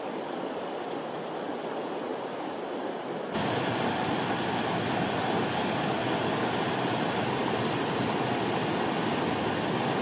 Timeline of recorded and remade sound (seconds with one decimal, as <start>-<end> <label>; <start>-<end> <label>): 0.0-10.0 recorded